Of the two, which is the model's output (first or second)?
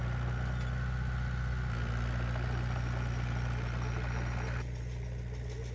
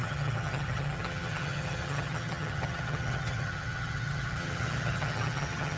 second